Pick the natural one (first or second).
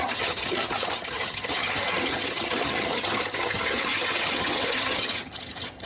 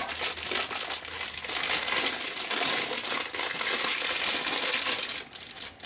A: second